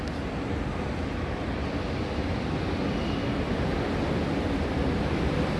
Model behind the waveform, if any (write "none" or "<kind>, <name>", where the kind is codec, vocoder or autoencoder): none